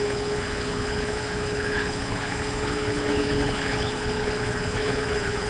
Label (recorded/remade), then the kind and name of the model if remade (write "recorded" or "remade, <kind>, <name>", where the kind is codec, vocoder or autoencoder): remade, codec, HILCodec